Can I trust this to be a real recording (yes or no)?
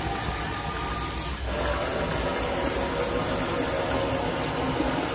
yes